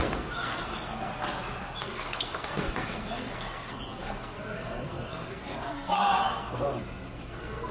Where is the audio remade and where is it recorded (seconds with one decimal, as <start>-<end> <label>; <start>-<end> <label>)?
0.0-1.1 remade; 1.1-1.8 recorded; 1.8-7.7 remade